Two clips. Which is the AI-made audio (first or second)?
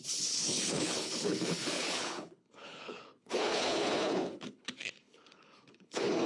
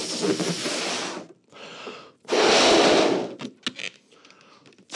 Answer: first